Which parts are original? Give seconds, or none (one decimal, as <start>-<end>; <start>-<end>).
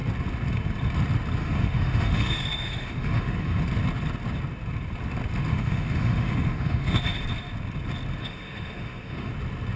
0.0-1.4; 3.6-5.5; 7.0-8.2; 9.3-9.8